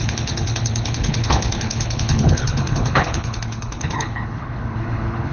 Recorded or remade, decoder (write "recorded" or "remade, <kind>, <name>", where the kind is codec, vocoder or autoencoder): remade, codec, HILCodec